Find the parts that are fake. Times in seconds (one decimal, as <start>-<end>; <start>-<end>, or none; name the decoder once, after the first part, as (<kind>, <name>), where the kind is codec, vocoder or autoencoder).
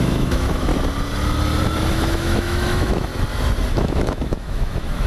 0.0-0.7 (autoencoder, DAC-VAE); 1.9-3.1; 3.7-5.1